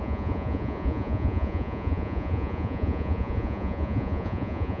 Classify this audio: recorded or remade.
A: remade